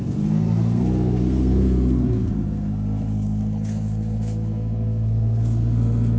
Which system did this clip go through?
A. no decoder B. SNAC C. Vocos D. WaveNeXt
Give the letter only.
B